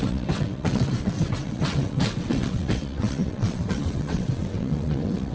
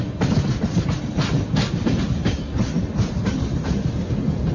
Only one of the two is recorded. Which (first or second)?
second